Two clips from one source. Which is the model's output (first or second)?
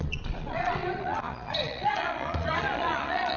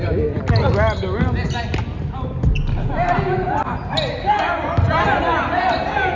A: first